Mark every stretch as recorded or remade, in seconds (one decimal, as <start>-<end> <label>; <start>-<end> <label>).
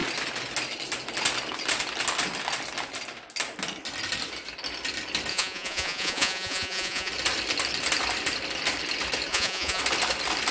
0.0-5.3 recorded; 5.3-7.1 remade; 7.1-9.3 recorded; 9.3-9.8 remade; 9.8-10.5 recorded